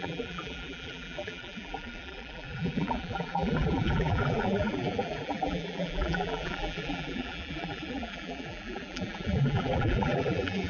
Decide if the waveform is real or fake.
fake